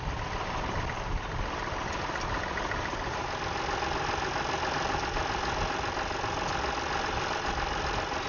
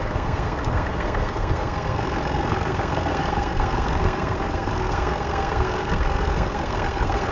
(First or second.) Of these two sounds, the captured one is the first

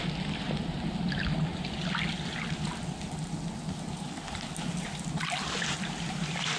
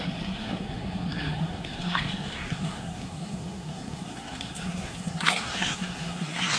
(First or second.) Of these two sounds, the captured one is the first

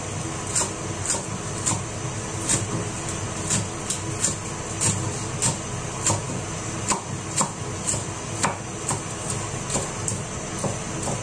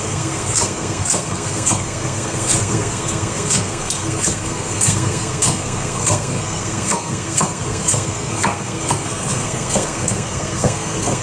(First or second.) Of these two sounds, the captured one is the first